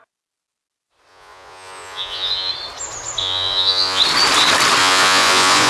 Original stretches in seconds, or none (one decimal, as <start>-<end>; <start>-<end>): 0.0-1.1; 2.5-3.2; 4.0-4.8